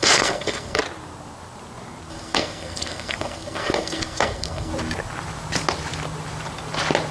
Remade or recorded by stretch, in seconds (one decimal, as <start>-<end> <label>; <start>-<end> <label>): 0.0-0.8 remade; 0.8-2.1 recorded; 2.1-4.7 remade; 4.7-7.1 recorded